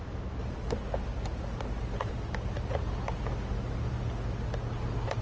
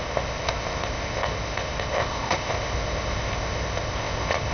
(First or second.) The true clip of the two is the first